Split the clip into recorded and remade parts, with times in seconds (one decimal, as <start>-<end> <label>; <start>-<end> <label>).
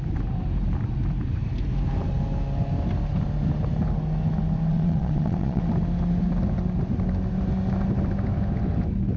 0.0-4.7 recorded; 4.7-5.6 remade; 5.6-9.2 recorded